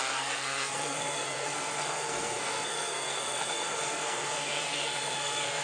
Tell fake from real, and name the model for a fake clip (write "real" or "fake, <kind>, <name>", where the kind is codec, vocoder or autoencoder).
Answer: fake, codec, SNAC